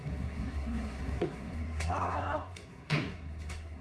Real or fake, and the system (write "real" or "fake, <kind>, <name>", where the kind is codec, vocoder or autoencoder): fake, codec, SNAC